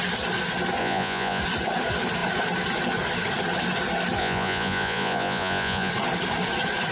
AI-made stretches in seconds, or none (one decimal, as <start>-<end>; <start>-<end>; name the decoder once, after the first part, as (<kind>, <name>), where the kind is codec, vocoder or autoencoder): 0.8-1.4 (vocoder, Vocos); 4.2-5.9